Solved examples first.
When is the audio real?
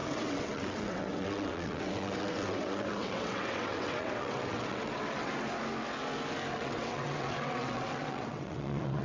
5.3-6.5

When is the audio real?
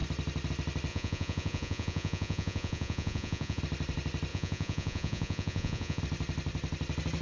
0.0-0.9; 3.6-4.3; 6.0-7.2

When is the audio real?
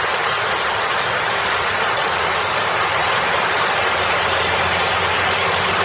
0.0-3.0; 4.1-5.8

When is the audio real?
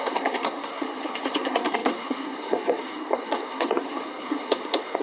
none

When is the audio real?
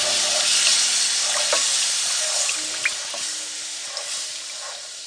0.0-0.7; 2.5-5.1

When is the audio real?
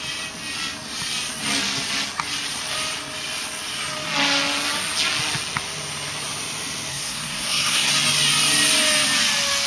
0.0-6.9; 7.9-9.7